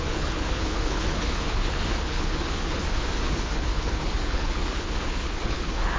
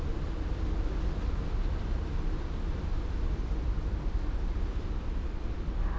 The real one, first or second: second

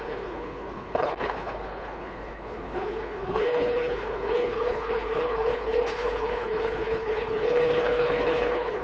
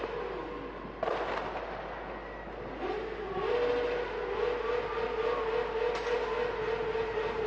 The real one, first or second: second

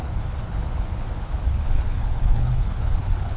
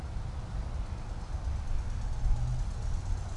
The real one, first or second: second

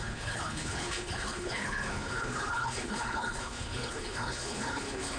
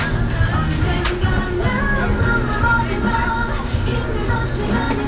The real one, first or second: second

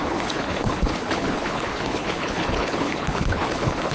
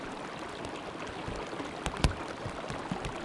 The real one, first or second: second